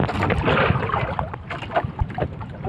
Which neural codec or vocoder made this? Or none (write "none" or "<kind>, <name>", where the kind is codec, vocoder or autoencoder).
none